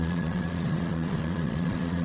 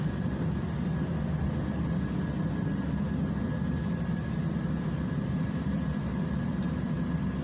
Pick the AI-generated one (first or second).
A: first